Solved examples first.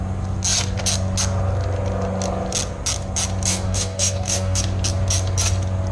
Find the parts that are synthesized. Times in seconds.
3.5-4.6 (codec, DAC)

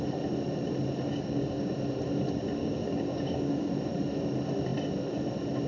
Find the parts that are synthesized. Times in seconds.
1.1-1.7 (codec, DAC); 2.6-3.7

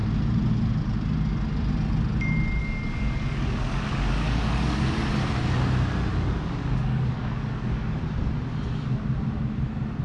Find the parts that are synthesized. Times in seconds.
2.6-4.8 (codec, DAC); 6.1-8.0

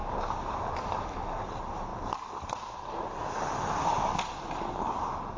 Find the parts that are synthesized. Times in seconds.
0.0-0.6 (codec, DAC)